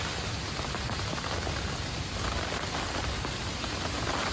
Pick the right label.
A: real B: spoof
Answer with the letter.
A